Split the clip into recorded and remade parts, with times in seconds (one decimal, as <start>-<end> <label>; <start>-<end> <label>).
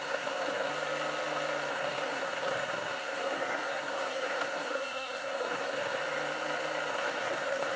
0.0-0.7 remade; 0.7-1.7 recorded; 1.7-6.0 remade; 6.0-6.9 recorded; 6.9-7.8 remade